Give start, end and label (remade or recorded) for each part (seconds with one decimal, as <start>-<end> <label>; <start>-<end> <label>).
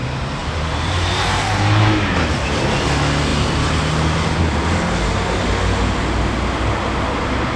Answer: 0.0-0.4 recorded; 0.4-2.6 remade; 2.6-3.3 recorded; 3.3-4.4 remade; 4.4-7.6 recorded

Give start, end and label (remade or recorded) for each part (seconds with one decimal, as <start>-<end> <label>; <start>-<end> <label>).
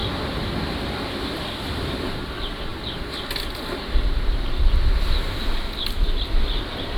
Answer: 0.0-7.0 recorded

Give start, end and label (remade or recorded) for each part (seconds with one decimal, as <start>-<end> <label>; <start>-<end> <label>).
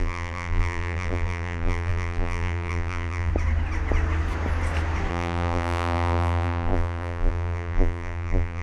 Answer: 0.0-3.3 remade; 3.3-5.1 recorded; 5.1-8.6 remade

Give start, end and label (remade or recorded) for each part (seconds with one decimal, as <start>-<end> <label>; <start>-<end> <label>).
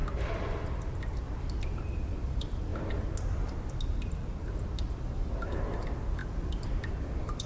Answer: 0.0-1.5 recorded; 1.5-2.7 remade; 2.7-5.8 recorded; 5.8-7.5 remade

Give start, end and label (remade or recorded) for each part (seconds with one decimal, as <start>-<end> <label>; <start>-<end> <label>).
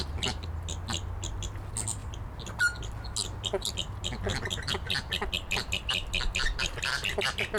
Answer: 0.0-7.6 recorded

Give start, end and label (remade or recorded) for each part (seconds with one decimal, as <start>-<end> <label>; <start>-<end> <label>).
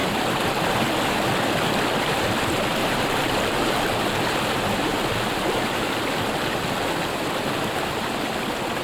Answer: 0.0-0.8 remade; 0.8-2.8 recorded; 2.8-4.4 remade; 4.4-8.8 recorded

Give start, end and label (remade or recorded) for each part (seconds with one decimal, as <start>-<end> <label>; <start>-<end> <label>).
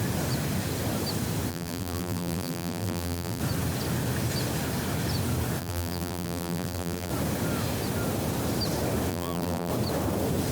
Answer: 0.0-1.5 recorded; 1.5-3.4 remade; 3.4-5.6 recorded; 5.6-7.1 remade; 7.1-9.1 recorded; 9.1-9.7 remade; 9.7-10.5 recorded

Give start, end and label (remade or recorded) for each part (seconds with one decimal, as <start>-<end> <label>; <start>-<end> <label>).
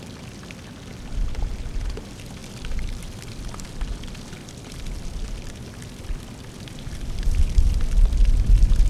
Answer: 0.0-8.9 recorded